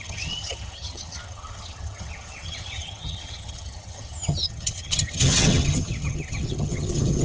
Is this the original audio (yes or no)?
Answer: no